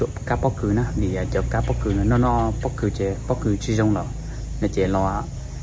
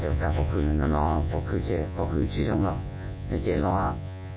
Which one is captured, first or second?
first